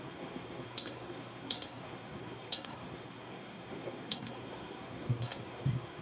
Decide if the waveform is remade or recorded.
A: remade